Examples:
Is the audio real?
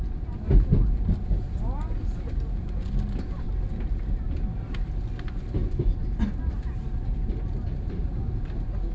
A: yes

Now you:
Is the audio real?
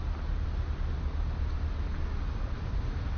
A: yes